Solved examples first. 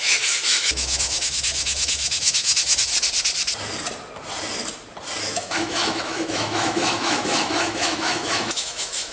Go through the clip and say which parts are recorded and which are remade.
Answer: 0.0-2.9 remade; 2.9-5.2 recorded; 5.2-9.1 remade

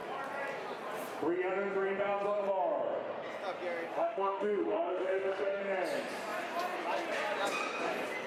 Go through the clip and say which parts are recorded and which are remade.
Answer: 0.0-3.9 recorded; 3.9-5.6 remade; 5.6-8.3 recorded

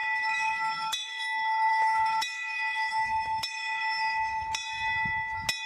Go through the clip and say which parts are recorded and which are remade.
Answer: 0.0-1.2 remade; 1.2-1.7 recorded; 1.7-4.4 remade; 4.4-5.7 recorded